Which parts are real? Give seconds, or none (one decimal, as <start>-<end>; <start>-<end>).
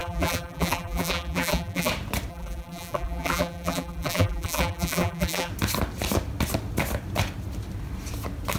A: 1.9-2.3; 5.5-8.6